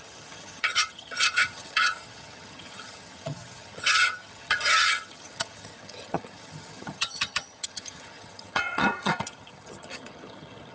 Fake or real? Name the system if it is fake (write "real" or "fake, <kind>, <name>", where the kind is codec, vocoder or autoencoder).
fake, vocoder, HiFi-GAN